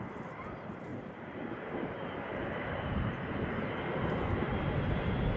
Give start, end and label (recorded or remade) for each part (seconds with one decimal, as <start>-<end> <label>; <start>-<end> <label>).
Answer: 0.0-0.9 recorded; 0.9-1.7 remade; 1.7-2.3 recorded; 2.3-3.3 remade; 3.3-5.4 recorded